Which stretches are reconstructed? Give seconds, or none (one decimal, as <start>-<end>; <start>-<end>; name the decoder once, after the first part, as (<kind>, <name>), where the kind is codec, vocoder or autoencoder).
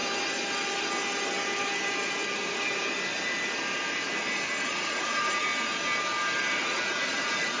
4.6-5.5 (vocoder, Vocos); 6.6-7.6